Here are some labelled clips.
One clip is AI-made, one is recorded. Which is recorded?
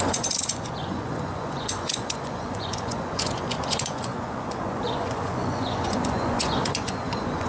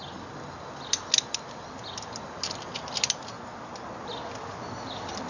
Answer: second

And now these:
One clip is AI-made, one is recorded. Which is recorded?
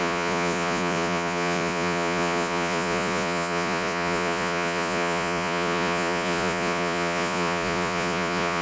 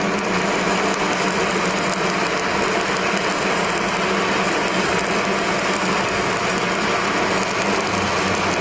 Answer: second